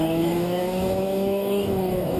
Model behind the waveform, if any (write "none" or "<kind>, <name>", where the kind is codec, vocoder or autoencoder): codec, DAC